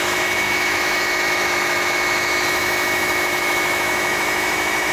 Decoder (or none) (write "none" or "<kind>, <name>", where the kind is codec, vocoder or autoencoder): autoencoder, DAC-VAE